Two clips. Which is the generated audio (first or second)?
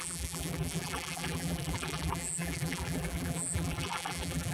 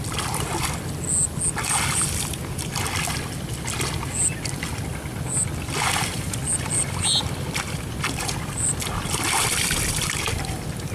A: first